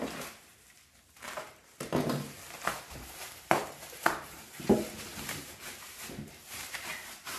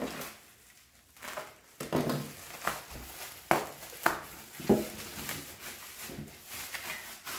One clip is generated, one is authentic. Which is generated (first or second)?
first